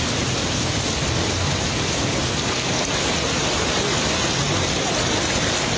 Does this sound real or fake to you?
real